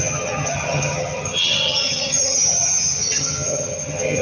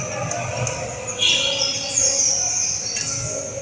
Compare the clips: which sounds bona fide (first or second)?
second